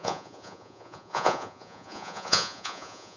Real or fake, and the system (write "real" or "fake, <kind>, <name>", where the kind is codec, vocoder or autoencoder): fake, vocoder, Vocos